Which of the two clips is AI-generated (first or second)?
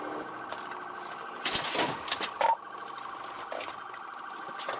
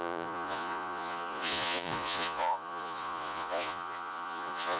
second